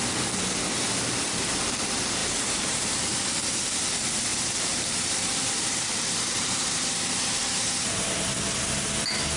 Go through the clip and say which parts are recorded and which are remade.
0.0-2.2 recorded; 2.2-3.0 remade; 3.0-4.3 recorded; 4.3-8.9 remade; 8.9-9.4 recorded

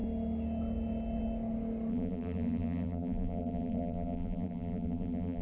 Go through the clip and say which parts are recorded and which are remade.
0.0-1.9 recorded; 1.9-5.4 remade